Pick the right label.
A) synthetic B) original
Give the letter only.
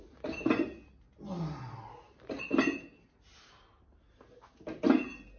B